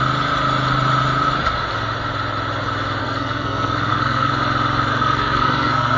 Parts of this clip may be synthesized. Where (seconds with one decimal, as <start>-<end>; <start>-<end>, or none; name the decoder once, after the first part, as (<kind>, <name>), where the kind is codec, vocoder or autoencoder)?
3.0-4.3 (codec, SNAC); 4.9-6.0